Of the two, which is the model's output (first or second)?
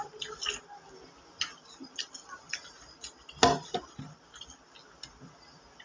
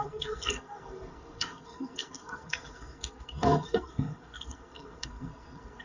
second